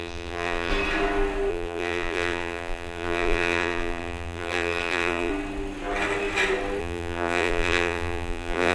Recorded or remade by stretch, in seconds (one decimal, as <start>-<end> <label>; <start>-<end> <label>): 0.0-0.7 remade; 0.7-1.5 recorded; 1.5-5.3 remade; 5.3-6.8 recorded; 6.8-8.7 remade